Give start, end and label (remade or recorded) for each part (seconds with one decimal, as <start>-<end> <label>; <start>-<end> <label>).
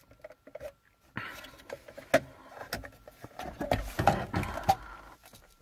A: 0.0-5.6 recorded